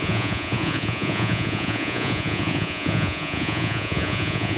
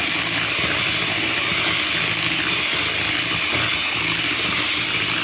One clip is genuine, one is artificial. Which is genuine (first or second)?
second